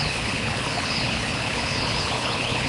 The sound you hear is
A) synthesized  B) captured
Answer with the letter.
A